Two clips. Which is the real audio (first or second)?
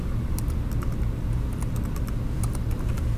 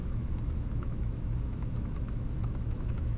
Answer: first